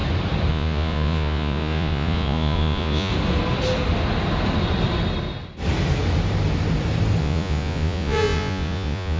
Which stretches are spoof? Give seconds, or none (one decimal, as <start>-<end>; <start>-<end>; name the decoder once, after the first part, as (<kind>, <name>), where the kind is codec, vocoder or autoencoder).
0.5-3.1 (vocoder, Vocos); 7.2-9.2